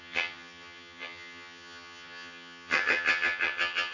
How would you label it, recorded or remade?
remade